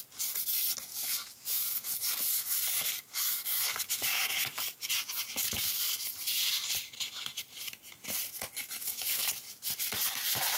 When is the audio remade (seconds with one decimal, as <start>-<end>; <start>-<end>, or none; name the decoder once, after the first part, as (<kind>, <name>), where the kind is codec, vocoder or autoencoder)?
0.9-4.9 (codec, DAC); 5.4-5.9; 8.8-9.3